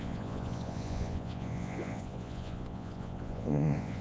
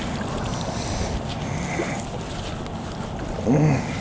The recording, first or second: second